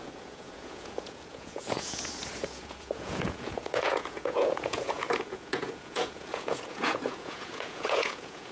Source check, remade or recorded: remade